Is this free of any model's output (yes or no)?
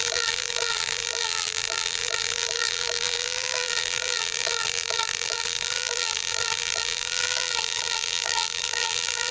no